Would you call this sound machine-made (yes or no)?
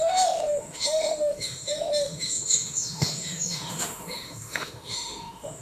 yes